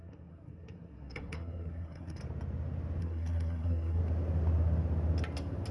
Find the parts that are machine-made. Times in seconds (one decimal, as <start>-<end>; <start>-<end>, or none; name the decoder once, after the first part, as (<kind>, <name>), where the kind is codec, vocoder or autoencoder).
0.0-2.2 (codec, SNAC); 3.0-4.0